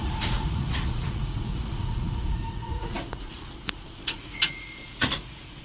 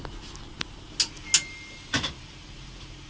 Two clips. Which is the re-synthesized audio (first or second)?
first